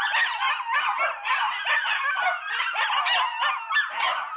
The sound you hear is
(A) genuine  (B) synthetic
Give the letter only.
A